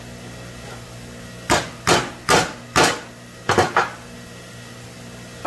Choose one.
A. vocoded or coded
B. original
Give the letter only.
B